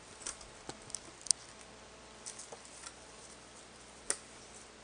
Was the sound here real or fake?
real